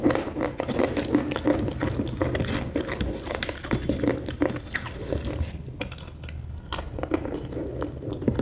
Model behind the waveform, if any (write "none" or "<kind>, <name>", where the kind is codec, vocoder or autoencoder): none